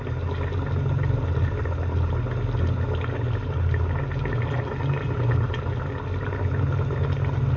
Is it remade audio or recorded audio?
recorded